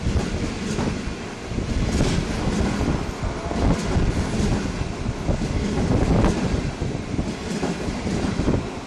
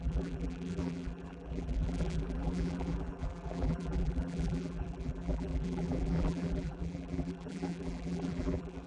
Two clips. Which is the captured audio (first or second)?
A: first